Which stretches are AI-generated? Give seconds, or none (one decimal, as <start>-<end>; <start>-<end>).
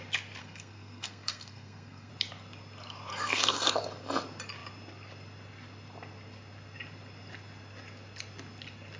0.4-2.1; 3.1-3.7